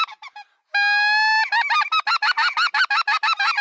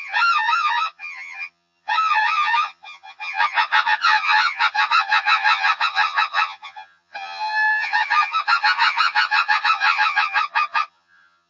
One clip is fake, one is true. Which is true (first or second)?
first